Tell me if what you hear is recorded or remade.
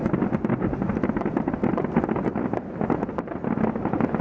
recorded